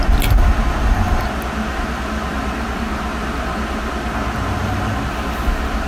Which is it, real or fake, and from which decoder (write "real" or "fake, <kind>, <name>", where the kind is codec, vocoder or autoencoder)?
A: real